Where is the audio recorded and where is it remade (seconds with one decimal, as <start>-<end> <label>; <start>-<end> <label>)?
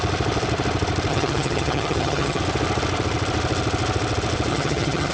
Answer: 0.0-1.1 recorded; 1.1-2.4 remade; 2.4-4.5 recorded; 4.5-5.1 remade